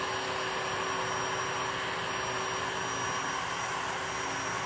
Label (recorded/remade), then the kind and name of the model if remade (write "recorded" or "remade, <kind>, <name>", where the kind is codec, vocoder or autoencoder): recorded